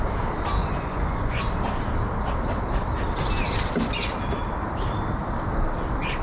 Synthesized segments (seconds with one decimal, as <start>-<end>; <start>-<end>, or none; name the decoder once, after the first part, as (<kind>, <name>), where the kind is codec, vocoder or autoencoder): 0.6-1.4 (vocoder, Vocos)